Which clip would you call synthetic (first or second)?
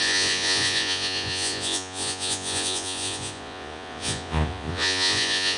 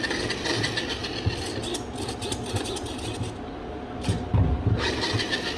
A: first